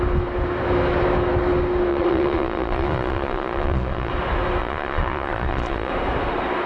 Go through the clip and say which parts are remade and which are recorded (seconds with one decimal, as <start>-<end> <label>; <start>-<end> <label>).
0.0-1.9 recorded; 1.9-4.1 remade; 4.1-4.6 recorded; 4.6-5.9 remade; 5.9-6.7 recorded

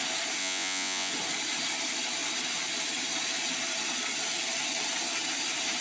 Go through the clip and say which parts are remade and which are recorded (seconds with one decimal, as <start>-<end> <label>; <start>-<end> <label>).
0.0-0.4 recorded; 0.4-1.1 remade; 1.1-5.8 recorded